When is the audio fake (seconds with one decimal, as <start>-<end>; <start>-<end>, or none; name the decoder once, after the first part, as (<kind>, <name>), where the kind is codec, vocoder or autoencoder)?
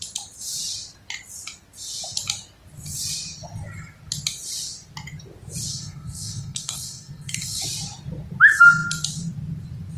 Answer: 5.7-7.6 (codec, SNAC)